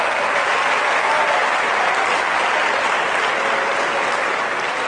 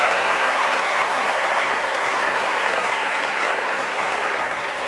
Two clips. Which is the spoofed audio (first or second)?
second